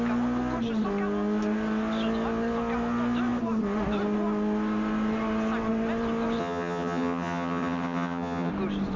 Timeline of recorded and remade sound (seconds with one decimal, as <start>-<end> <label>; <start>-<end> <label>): 0.0-6.4 recorded; 6.4-8.5 remade; 8.5-9.0 recorded